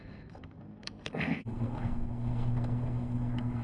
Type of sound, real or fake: fake